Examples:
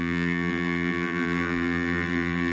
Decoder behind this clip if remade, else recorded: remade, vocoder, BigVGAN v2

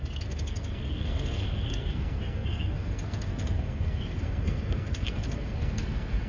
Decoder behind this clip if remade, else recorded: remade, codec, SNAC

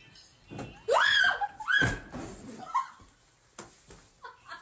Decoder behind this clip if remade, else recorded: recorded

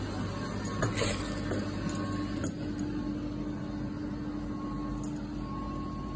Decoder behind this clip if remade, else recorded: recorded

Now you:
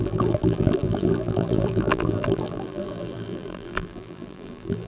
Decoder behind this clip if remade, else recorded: remade, vocoder, BigVGAN v2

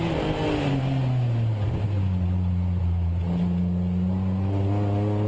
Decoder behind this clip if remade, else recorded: recorded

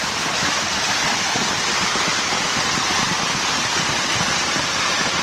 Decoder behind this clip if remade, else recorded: recorded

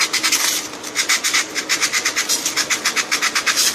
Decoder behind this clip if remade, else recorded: recorded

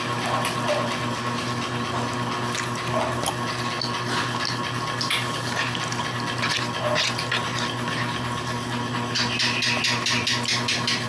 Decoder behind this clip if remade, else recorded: recorded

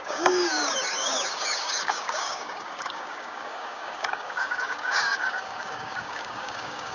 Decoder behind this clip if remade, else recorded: remade, codec, DAC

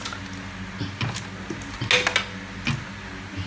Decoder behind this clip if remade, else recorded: recorded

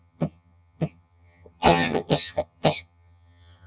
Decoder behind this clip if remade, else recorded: remade, vocoder, HiFi-GAN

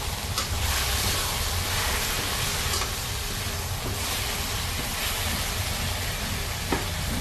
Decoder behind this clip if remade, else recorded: recorded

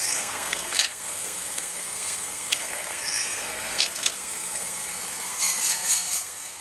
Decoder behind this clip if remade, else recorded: remade, codec, SNAC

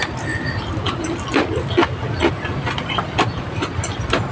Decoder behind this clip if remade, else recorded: recorded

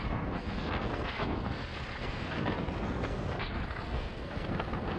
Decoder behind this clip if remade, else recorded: remade, codec, SNAC